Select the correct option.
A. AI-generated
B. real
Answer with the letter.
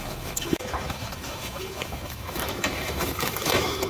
A